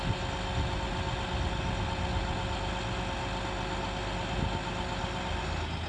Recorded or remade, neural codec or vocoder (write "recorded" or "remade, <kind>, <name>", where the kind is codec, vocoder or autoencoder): recorded